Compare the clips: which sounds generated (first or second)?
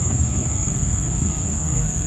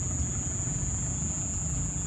first